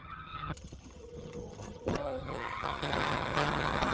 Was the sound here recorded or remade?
remade